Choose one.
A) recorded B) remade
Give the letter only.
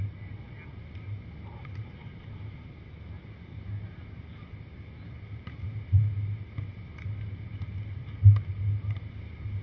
A